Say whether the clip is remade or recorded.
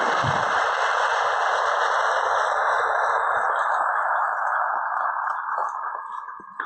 recorded